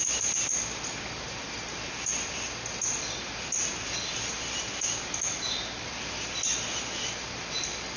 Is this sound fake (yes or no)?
no